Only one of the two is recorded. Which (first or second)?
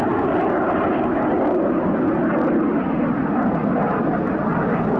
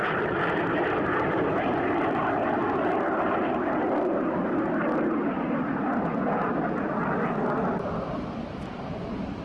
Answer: first